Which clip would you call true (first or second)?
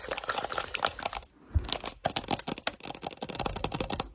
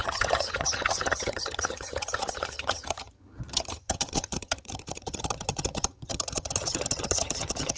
first